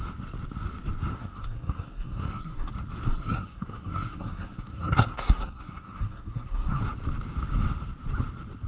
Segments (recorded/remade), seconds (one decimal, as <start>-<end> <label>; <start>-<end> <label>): 0.0-1.1 recorded; 1.1-2.7 remade; 2.7-3.1 recorded; 3.1-6.8 remade; 6.8-8.7 recorded

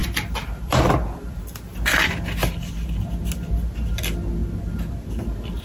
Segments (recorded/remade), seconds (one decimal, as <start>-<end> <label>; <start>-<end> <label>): 0.0-0.8 remade; 0.8-5.6 recorded

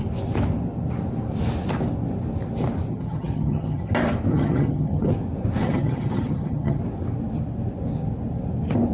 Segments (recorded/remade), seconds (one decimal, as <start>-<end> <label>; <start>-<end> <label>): 0.0-2.9 recorded; 2.9-3.9 remade; 3.9-4.3 recorded; 4.3-5.1 remade; 5.1-5.6 recorded; 5.6-6.8 remade; 6.8-8.9 recorded